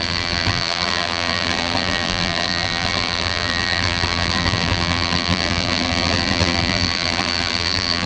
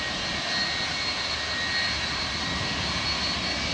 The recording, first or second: second